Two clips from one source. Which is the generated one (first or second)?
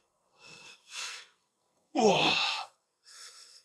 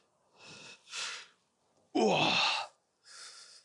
first